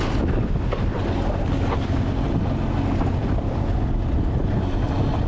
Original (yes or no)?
yes